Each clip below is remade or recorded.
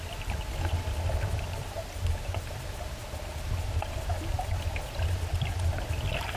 recorded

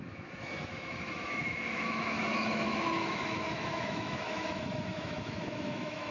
remade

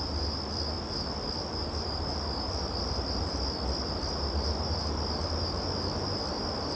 recorded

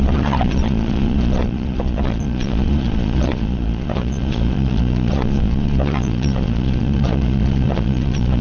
remade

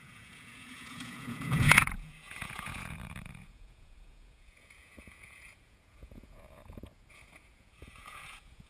remade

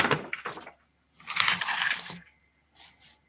remade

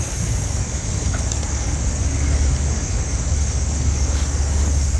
remade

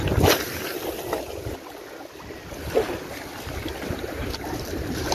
remade